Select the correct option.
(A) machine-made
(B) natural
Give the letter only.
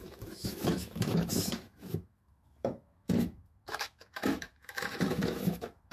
A